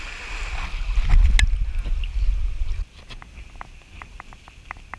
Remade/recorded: recorded